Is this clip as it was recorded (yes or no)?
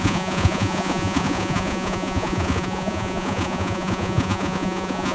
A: no